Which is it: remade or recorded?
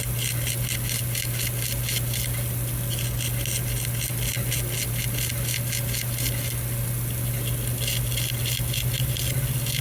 recorded